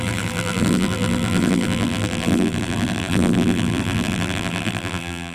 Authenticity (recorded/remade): remade